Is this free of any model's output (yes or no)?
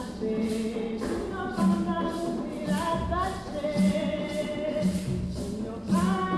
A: yes